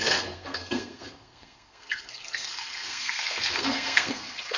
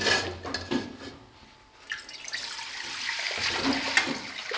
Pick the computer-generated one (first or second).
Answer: first